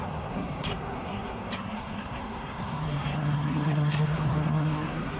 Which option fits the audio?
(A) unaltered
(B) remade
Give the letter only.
B